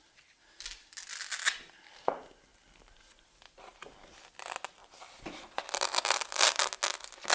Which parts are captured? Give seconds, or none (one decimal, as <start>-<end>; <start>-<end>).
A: 0.0-4.8; 5.4-7.3